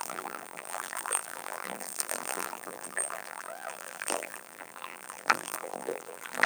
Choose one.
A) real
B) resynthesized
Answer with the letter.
B